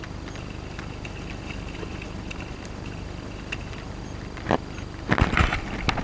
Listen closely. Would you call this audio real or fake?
real